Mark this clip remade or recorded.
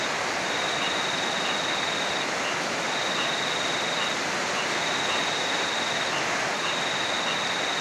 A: recorded